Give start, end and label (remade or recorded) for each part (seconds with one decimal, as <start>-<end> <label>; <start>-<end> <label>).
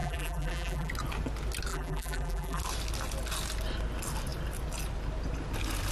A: 0.0-0.9 remade; 0.9-1.7 recorded; 1.7-2.6 remade; 2.6-5.9 recorded